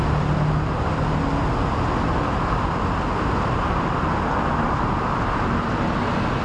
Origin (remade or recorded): recorded